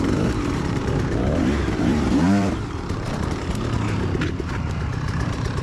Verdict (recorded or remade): remade